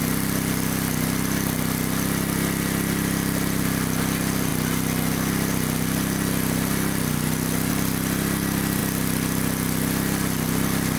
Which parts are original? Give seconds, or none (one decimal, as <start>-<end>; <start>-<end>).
0.0-11.0